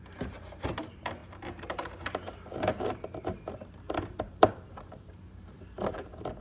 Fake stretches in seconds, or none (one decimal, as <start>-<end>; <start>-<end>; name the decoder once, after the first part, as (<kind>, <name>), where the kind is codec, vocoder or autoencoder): 0.0-6.4 (vocoder, BigVGAN v2)

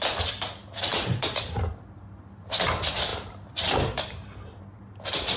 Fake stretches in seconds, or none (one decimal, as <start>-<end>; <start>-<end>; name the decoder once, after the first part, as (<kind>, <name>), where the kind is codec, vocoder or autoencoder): 0.9-1.7 (vocoder, BigVGAN v2); 3.1-4.6

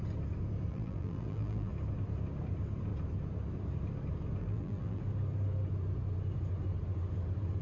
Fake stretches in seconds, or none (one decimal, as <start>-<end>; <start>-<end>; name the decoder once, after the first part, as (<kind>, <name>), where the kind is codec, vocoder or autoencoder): 0.7-1.7 (vocoder, BigVGAN v2); 4.4-5.0

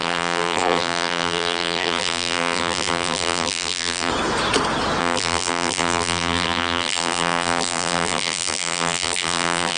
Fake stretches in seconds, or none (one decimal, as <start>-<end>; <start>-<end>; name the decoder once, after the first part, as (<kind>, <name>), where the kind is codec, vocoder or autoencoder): 0.0-4.1 (vocoder, BigVGAN v2); 5.0-9.8

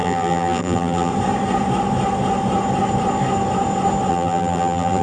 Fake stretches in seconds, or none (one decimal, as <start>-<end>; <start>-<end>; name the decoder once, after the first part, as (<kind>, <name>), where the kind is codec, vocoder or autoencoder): 0.0-1.1 (vocoder, BigVGAN v2); 4.1-5.0

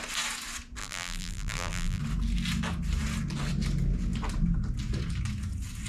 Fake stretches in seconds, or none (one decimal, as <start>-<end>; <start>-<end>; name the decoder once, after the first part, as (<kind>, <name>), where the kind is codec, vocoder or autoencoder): 0.8-2.0 (vocoder, BigVGAN v2)